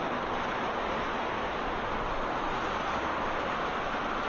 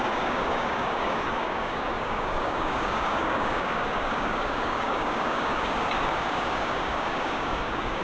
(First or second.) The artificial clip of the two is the second